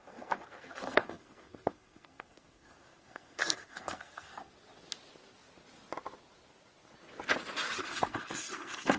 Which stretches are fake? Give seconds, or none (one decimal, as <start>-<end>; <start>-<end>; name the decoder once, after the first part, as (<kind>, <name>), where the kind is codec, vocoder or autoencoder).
0.0-4.5 (codec, SNAC); 7.8-9.0